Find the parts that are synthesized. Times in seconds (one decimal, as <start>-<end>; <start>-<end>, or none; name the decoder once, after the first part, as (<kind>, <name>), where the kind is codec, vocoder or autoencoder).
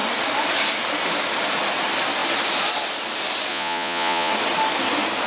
3.5-4.3 (vocoder, Vocos)